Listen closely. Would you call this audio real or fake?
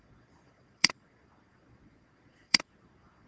fake